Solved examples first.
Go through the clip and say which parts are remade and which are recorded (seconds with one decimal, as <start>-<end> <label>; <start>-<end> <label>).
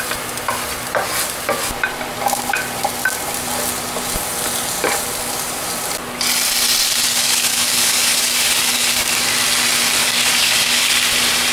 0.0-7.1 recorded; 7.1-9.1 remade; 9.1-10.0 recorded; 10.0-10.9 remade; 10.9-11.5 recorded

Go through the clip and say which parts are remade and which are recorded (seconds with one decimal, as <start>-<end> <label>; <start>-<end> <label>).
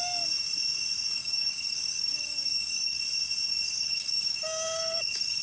0.0-1.2 recorded; 1.2-3.0 remade; 3.0-3.5 recorded; 3.5-5.4 remade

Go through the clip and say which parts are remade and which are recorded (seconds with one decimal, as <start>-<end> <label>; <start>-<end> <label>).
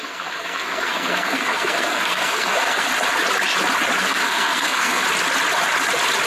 0.0-2.9 remade; 2.9-4.0 recorded; 4.0-5.0 remade; 5.0-6.3 recorded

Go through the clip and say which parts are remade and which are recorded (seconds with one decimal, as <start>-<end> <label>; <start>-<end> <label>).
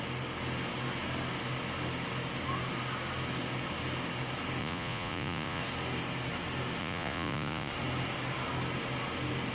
0.0-4.6 recorded; 4.6-5.6 remade; 5.6-6.8 recorded; 6.8-7.7 remade; 7.7-9.5 recorded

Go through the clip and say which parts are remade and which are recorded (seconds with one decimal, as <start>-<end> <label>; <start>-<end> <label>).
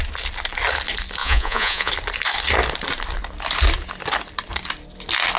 0.0-1.2 recorded; 1.2-1.9 remade; 1.9-5.4 recorded